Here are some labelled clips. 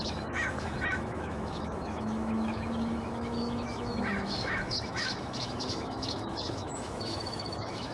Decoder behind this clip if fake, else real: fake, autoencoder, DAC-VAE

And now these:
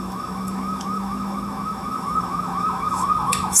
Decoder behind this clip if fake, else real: fake, autoencoder, DAC-VAE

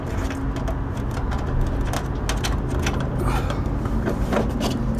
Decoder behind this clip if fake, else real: real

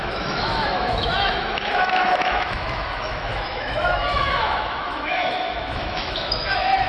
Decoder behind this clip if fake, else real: fake, autoencoder, DAC-VAE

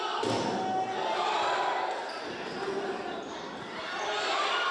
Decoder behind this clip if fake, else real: real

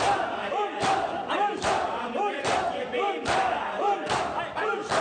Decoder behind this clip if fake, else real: real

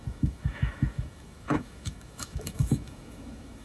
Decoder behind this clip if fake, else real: fake, autoencoder, DAC-VAE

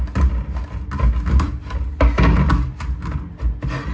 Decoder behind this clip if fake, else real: real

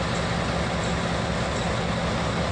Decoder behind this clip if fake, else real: real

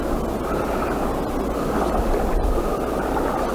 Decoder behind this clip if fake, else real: real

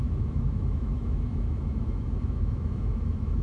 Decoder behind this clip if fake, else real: fake, autoencoder, DAC-VAE